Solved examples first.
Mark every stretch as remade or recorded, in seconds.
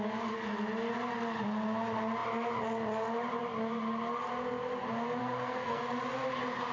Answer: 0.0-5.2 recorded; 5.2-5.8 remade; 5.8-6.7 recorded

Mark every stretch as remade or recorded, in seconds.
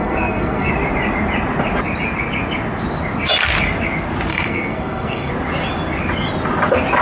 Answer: 0.0-0.7 remade; 0.7-4.3 recorded; 4.3-5.3 remade; 5.3-7.0 recorded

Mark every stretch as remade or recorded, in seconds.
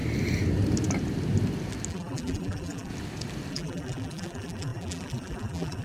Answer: 0.0-1.9 recorded; 1.9-2.9 remade; 2.9-3.5 recorded; 3.5-5.8 remade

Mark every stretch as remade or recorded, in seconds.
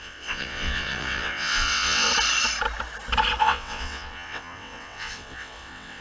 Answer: 0.0-2.1 remade; 2.1-3.4 recorded; 3.4-6.0 remade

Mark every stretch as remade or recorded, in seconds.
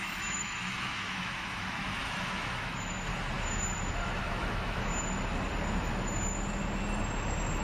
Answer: 0.0-3.1 remade; 3.1-4.2 recorded; 4.2-4.9 remade; 4.9-7.6 recorded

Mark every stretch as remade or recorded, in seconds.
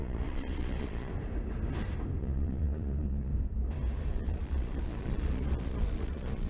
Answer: 0.0-1.1 remade; 1.1-2.2 recorded; 2.2-3.3 remade; 3.3-4.1 recorded; 4.1-6.5 remade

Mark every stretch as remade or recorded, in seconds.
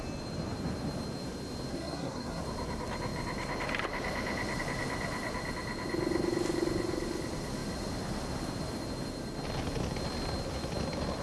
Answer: 0.0-1.7 recorded; 1.7-2.4 remade; 2.4-11.2 recorded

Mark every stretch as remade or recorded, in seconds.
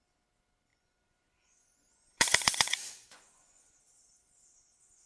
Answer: 0.0-0.7 recorded; 0.7-3.8 remade; 3.8-5.1 recorded